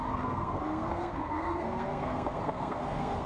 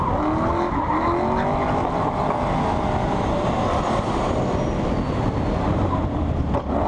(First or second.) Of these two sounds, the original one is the second